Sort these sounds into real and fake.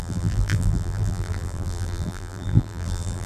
fake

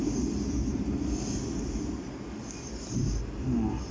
real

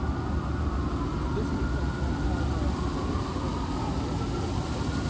real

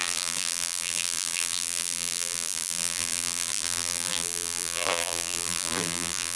fake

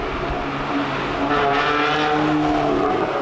real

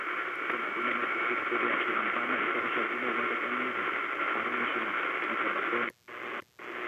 real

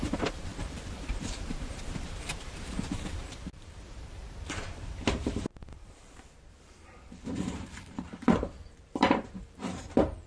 fake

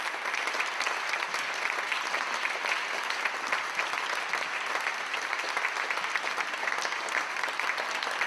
fake